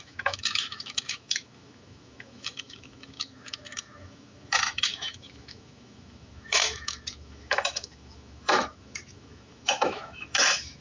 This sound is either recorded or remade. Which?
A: remade